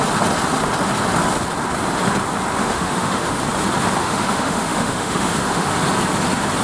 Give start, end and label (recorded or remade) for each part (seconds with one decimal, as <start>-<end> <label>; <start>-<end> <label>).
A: 0.0-2.6 recorded; 2.6-3.4 remade; 3.4-4.0 recorded; 4.0-5.7 remade; 5.7-6.6 recorded

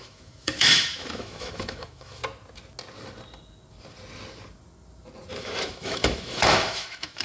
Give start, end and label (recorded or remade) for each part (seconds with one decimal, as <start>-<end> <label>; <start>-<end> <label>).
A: 0.0-2.2 remade; 2.2-5.4 recorded; 5.4-7.2 remade

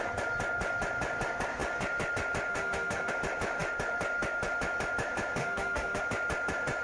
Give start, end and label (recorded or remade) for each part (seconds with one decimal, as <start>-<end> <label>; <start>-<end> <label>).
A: 0.0-2.5 recorded; 2.5-3.1 remade; 3.1-5.4 recorded; 5.4-6.0 remade; 6.0-6.8 recorded

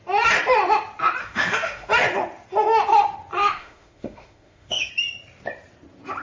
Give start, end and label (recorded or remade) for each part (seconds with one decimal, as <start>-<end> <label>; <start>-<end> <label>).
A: 0.0-1.2 recorded; 1.2-1.9 remade; 1.9-3.4 recorded; 3.4-4.9 remade; 4.9-6.2 recorded

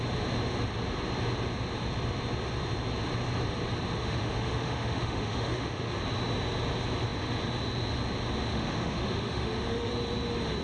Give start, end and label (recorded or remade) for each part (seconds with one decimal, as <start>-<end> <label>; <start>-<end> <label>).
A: 0.0-4.0 recorded; 4.0-6.0 remade; 6.0-8.5 recorded; 8.5-9.9 remade; 9.9-10.6 recorded

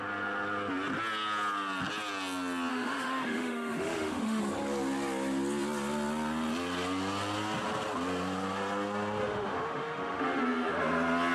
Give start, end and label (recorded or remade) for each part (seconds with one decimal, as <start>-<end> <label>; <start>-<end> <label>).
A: 0.0-2.7 recorded; 2.7-4.4 remade; 4.4-9.2 recorded; 9.2-10.4 remade; 10.4-11.3 recorded